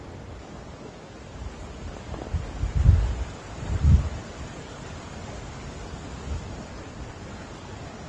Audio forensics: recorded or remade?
recorded